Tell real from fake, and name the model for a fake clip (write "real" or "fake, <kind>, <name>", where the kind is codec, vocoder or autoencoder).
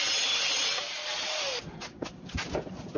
fake, vocoder, BigVGAN v2